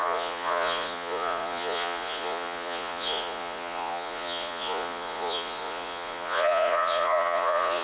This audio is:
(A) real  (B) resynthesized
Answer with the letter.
B